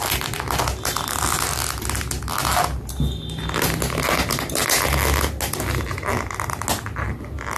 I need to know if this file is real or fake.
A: real